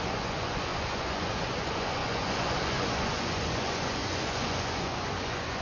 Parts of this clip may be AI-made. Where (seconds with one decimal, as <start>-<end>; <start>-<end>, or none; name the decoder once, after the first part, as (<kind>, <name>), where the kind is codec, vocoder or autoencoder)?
0.0-5.6 (vocoder, Vocos)